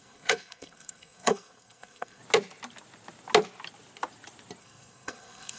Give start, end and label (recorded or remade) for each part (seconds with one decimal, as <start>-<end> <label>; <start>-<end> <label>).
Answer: 0.0-2.2 remade; 2.2-4.6 recorded; 4.6-5.6 remade